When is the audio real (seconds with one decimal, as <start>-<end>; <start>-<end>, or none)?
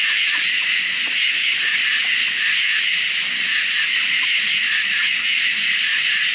0.0-6.3